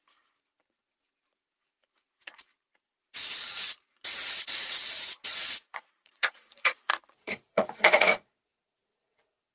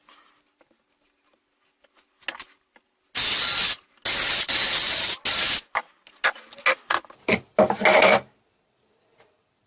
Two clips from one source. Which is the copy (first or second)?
first